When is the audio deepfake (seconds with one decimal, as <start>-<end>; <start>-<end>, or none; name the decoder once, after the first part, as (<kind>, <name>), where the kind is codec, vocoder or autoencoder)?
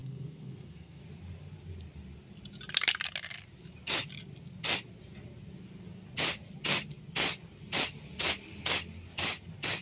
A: 0.0-1.0 (codec, SNAC)